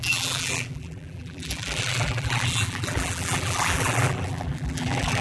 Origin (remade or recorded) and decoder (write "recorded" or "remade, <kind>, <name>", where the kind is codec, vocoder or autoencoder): remade, vocoder, BigVGAN v2